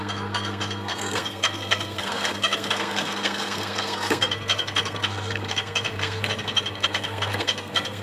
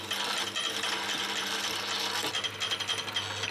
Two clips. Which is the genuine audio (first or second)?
second